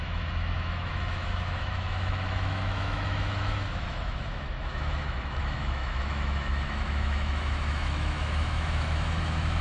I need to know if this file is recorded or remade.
remade